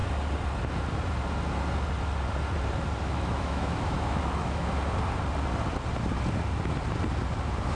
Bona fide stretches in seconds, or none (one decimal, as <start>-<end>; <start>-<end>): 0.0-3.0; 4.7-7.8